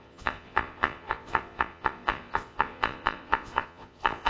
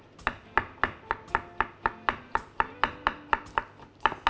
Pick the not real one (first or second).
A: first